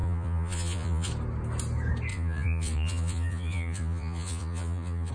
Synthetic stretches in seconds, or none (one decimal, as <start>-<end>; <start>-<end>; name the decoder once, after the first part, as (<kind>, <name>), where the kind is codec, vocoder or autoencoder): 0.0-1.1 (vocoder, Vocos); 2.1-5.1

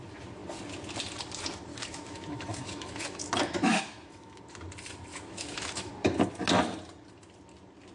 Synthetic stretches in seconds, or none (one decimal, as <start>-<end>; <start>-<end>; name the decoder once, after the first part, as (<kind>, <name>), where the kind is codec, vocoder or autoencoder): 1.7-4.4 (autoencoder, DAC-VAE); 5.1-5.9